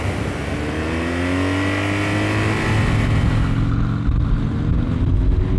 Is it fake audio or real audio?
real